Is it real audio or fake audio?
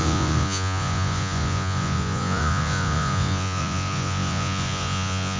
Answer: fake